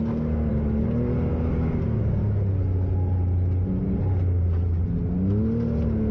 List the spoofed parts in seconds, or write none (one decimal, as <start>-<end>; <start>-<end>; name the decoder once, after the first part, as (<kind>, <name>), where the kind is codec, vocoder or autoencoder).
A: 0.0-0.5 (codec, DAC); 1.3-2.2